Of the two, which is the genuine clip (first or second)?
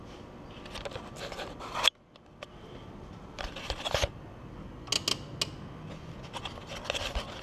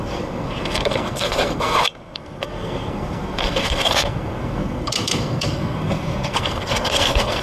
first